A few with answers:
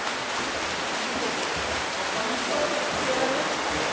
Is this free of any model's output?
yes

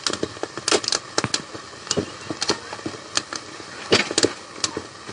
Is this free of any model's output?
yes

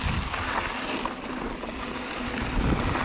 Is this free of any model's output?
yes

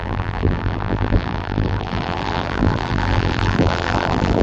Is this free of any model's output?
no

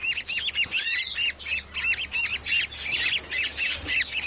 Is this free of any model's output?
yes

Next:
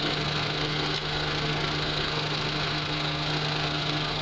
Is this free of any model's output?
no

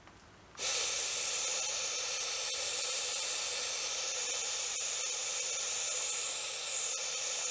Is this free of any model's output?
yes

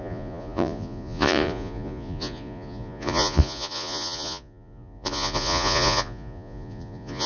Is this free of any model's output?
no